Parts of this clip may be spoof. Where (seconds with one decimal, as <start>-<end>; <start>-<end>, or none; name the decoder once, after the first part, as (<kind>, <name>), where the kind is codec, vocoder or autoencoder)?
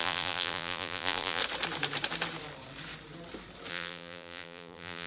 0.0-1.4 (vocoder, BigVGAN v2); 3.7-5.1